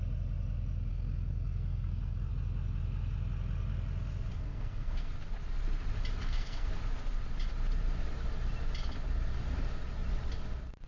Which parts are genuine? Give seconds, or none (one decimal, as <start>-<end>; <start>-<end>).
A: 0.0-0.9; 2.3-4.3; 5.1-6.2; 6.7-10.9